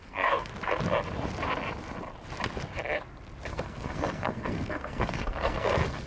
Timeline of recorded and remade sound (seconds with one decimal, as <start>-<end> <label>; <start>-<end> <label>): 0.0-0.5 remade; 0.5-3.5 recorded; 3.5-6.1 remade

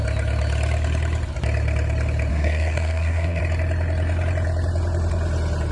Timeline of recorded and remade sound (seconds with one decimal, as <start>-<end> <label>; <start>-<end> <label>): 0.0-2.3 recorded; 2.3-3.4 remade; 3.4-5.7 recorded